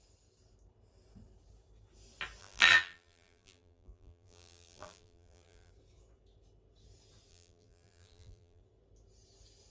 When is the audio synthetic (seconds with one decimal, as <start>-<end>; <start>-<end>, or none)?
2.4-5.7; 7.3-8.6